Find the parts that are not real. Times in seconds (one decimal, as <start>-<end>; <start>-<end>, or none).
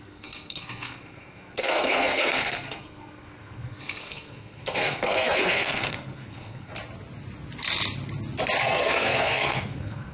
0.0-6.7; 8.6-10.1